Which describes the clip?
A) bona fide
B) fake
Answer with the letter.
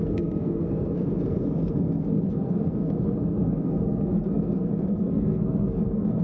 B